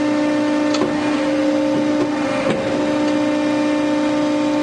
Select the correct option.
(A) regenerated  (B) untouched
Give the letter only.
B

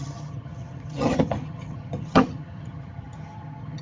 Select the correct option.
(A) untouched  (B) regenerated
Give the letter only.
B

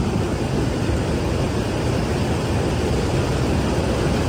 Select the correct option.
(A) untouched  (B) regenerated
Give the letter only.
A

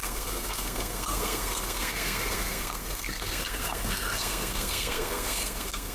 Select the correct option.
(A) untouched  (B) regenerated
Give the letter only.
B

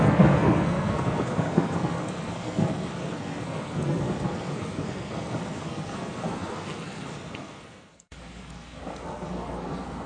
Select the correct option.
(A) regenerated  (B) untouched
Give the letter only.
A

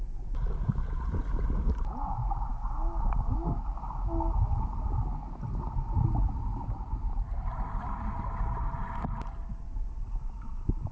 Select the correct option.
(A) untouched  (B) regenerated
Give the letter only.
A